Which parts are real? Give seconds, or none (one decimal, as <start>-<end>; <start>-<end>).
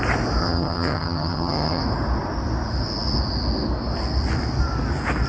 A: 0.0-0.4; 1.8-5.3